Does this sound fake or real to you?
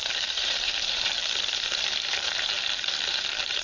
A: fake